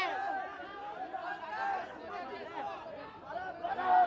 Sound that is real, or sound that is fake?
real